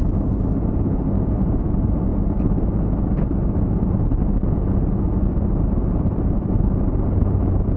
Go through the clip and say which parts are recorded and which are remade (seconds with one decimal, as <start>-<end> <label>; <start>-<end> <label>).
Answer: 0.0-7.8 recorded